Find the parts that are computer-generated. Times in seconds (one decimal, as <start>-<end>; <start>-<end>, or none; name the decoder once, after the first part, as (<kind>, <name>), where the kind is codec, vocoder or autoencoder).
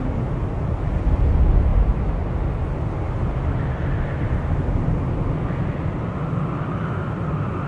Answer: none